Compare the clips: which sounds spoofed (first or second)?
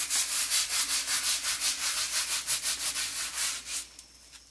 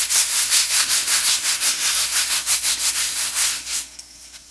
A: second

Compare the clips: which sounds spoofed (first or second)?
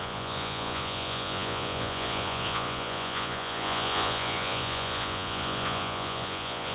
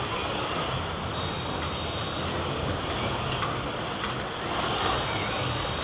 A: first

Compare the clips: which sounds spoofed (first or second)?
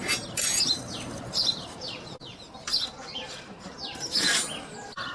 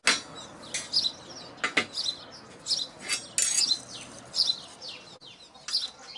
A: first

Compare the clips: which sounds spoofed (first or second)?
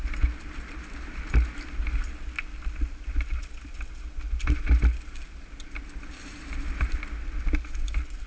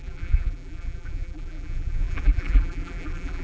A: second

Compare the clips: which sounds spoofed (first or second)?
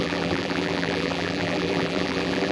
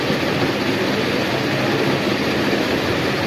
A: first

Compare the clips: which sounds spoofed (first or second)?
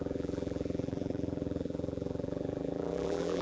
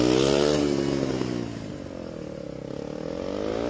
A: first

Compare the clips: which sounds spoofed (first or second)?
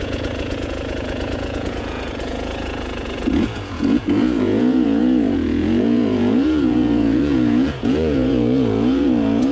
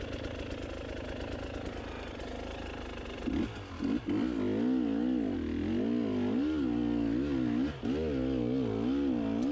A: first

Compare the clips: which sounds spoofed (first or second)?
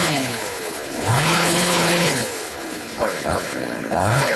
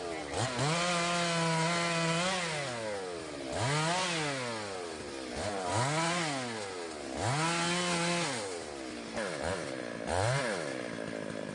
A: first